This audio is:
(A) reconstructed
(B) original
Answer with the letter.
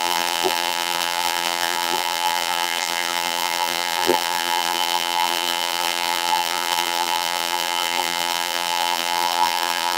A